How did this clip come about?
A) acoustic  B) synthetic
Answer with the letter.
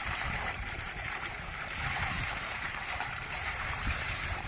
B